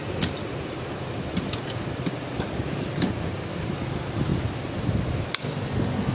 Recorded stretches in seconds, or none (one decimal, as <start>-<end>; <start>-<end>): 0.0-6.1